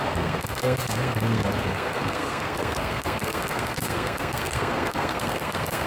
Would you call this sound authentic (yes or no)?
no